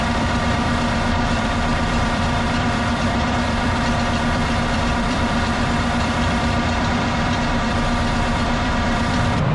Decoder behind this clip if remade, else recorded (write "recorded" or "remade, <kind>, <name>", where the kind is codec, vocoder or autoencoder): remade, vocoder, BigVGAN v2